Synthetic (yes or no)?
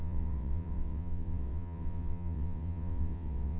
yes